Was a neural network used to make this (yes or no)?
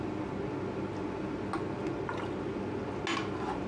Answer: no